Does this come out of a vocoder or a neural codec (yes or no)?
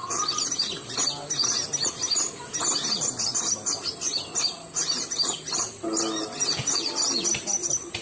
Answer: no